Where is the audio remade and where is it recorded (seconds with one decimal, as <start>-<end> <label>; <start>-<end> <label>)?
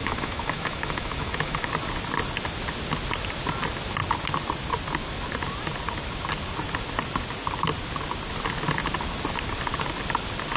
0.0-1.7 remade; 1.7-10.6 recorded